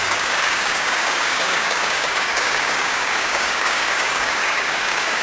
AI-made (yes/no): yes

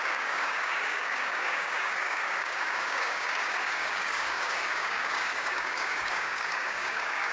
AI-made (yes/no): yes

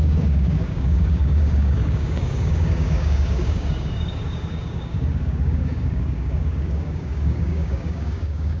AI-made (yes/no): yes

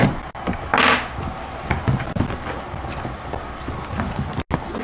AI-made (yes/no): no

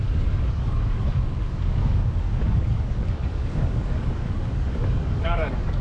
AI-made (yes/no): yes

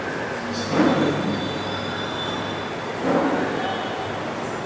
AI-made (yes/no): no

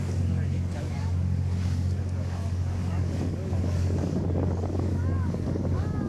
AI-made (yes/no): yes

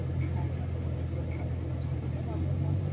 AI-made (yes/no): no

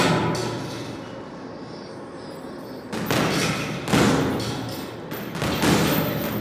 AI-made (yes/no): no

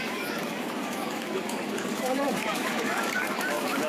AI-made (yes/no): yes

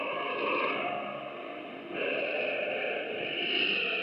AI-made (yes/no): no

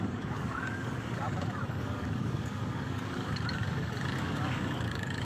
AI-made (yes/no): yes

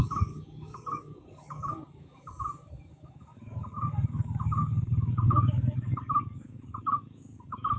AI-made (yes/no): yes